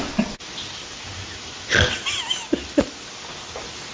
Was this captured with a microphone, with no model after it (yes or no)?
yes